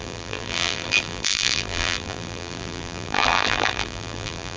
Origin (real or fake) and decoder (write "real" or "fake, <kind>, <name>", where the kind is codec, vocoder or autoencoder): fake, vocoder, BigVGAN v2